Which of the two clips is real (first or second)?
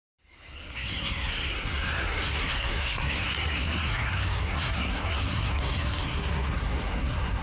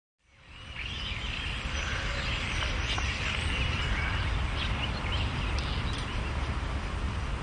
second